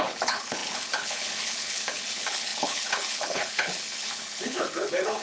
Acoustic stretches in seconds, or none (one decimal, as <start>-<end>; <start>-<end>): none